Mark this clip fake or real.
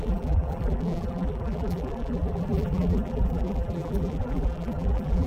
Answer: fake